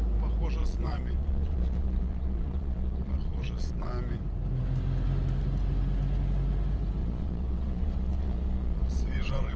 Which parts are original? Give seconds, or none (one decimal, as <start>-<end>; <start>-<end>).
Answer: 0.0-0.6; 3.9-7.0